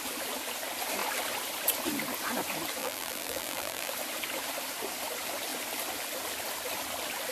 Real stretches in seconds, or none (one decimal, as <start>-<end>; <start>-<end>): 0.0-2.8; 3.9-7.3